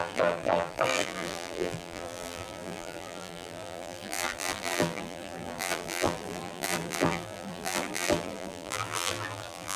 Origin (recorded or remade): remade